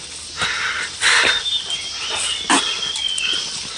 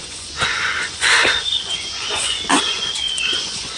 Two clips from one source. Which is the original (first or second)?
first